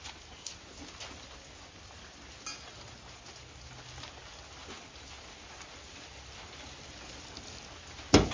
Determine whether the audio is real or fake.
real